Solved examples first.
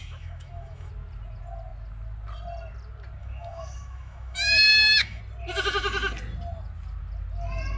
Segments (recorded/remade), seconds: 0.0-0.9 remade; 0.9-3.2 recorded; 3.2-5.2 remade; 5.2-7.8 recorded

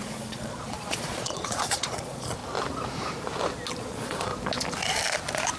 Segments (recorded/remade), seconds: 0.0-2.4 remade; 2.4-3.8 recorded; 3.8-4.3 remade; 4.3-5.6 recorded

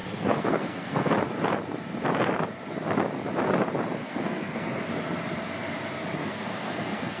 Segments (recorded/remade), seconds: 0.0-1.1 remade; 1.1-4.0 recorded; 4.0-4.7 remade; 4.7-6.2 recorded; 6.2-7.2 remade

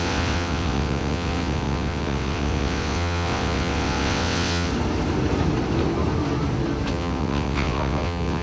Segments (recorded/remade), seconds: 0.0-4.7 remade; 4.7-6.9 recorded; 6.9-8.4 remade

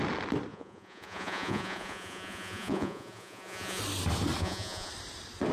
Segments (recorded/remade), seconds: 0.0-0.5 recorded; 0.5-3.8 remade; 3.8-4.4 recorded; 4.4-4.9 remade; 4.9-5.5 recorded

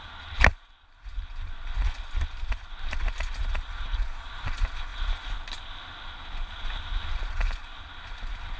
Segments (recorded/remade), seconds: 0.0-8.6 recorded

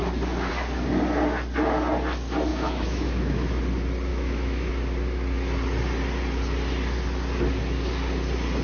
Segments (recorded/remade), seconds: 0.0-2.5 recorded; 2.5-3.6 remade; 3.6-4.1 recorded; 4.1-4.7 remade; 4.7-8.6 recorded

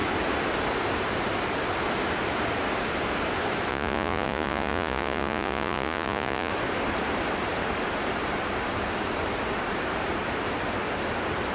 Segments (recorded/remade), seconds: 0.0-3.7 recorded; 3.7-6.5 remade; 6.5-11.5 recorded